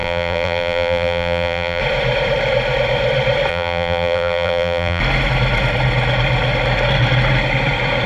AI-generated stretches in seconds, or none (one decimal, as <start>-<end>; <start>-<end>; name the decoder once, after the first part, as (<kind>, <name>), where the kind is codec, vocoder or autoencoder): 0.0-1.8 (vocoder, BigVGAN v2); 3.5-5.0